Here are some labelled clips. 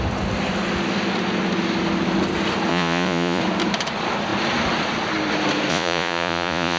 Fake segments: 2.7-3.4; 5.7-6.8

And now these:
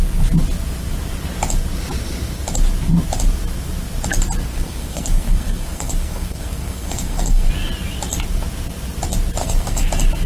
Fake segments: 4.5-7.5; 9.4-9.9

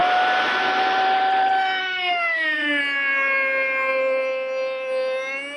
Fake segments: 1.8-2.8

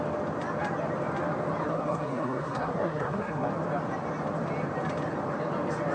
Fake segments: 1.7-3.5

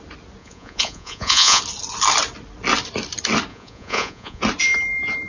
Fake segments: 0.4-1.6; 3.5-4.4

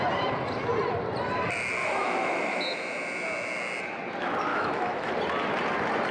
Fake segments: 1.8-2.6; 4.5-5.1

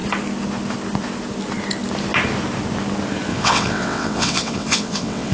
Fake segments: 3.3-5.3